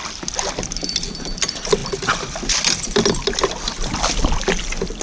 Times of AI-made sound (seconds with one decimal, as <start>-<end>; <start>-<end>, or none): none